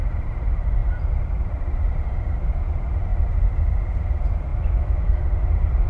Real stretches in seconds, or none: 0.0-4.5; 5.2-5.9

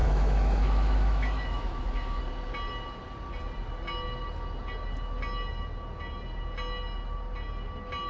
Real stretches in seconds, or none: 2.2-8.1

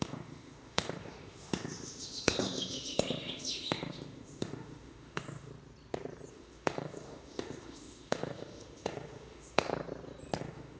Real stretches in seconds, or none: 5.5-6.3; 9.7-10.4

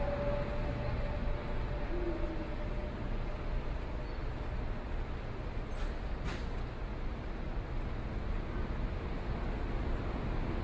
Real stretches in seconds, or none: 0.0-10.6

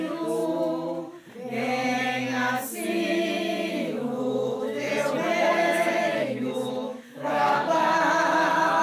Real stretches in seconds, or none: 0.4-3.7; 4.9-5.6

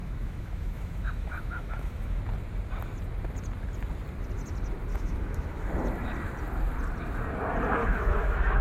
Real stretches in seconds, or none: 2.2-4.9; 5.7-7.8

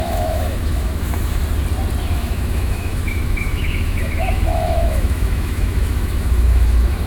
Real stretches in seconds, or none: 1.4-2.1

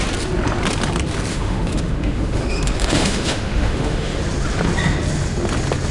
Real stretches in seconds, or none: 0.0-1.3; 4.2-5.9